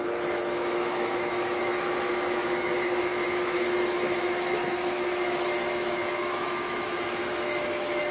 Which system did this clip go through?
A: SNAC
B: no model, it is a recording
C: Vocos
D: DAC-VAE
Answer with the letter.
D